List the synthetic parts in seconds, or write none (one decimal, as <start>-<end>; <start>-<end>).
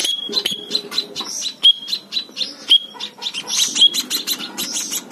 0.0-1.2